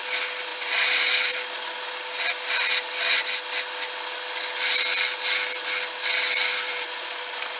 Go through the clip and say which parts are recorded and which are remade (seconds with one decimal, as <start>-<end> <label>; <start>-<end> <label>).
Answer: 0.0-0.5 recorded; 0.5-1.4 remade; 1.4-6.5 recorded; 6.5-7.6 remade